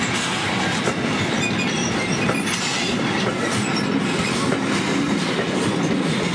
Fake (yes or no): no